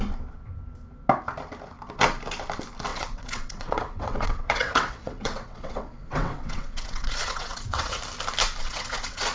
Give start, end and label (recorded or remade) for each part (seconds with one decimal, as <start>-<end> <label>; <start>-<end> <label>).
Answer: 0.0-2.9 recorded; 2.9-8.0 remade; 8.0-8.6 recorded; 8.6-9.3 remade